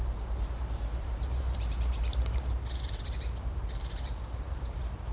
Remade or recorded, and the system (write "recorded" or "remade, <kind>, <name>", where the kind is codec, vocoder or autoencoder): remade, vocoder, BigVGAN v2